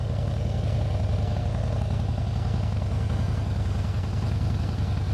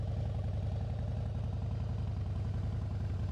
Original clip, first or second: second